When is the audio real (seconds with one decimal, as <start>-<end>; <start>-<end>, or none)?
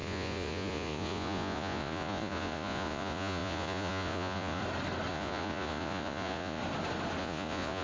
4.6-5.1; 6.6-7.2